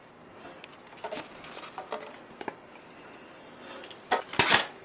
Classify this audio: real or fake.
real